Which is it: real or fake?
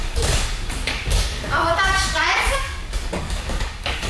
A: fake